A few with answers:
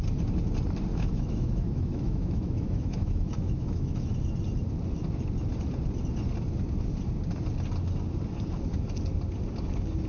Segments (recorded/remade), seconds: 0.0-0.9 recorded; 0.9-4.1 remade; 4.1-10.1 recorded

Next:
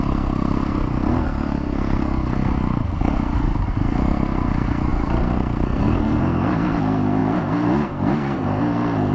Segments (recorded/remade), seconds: 0.0-9.1 remade